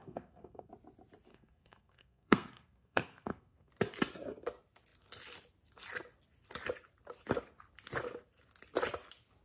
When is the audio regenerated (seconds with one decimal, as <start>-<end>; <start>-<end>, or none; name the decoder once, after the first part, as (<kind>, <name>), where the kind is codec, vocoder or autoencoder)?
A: 0.0-0.7 (codec, SNAC); 1.3-3.7